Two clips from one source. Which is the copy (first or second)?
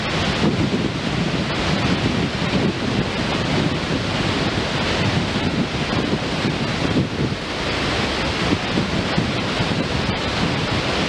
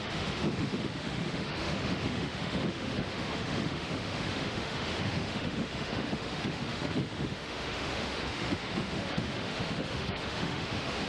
second